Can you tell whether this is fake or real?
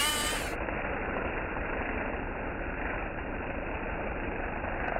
fake